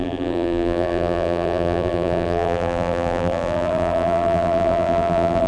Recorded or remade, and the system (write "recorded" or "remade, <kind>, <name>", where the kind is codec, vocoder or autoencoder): remade, vocoder, BigVGAN v2